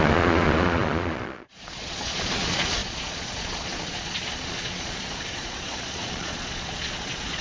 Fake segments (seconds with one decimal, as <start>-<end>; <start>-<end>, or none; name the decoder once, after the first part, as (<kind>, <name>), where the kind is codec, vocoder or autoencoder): 0.0-7.4 (vocoder, Vocos)